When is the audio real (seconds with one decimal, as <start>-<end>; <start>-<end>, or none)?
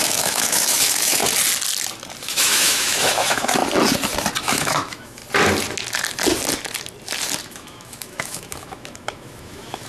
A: 1.2-2.2; 3.6-4.4; 5.2-7.4